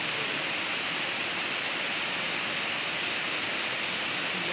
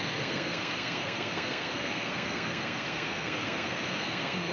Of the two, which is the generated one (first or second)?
second